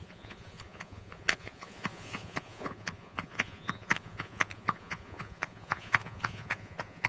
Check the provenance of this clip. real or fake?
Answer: fake